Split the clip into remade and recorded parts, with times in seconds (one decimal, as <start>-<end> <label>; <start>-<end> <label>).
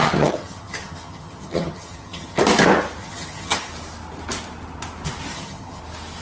0.0-2.4 remade; 2.4-3.0 recorded; 3.0-3.7 remade; 3.7-5.3 recorded; 5.3-5.8 remade; 5.8-6.2 recorded